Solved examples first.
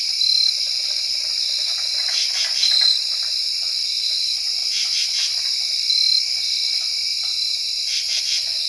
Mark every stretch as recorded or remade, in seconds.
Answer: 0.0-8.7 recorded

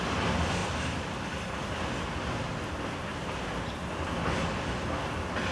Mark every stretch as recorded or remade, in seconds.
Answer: 0.0-0.6 recorded; 0.6-1.1 remade; 1.1-3.1 recorded; 3.1-3.7 remade; 3.7-5.5 recorded

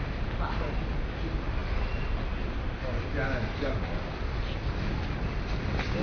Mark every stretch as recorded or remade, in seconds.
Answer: 0.0-6.0 recorded

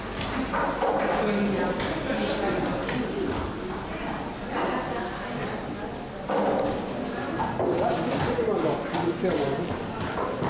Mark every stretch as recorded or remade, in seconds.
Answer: 0.0-10.5 recorded

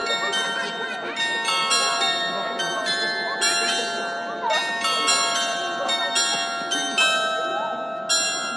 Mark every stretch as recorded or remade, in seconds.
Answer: 0.0-8.6 recorded